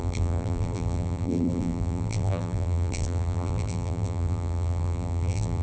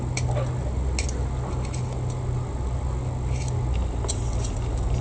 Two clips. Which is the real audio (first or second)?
second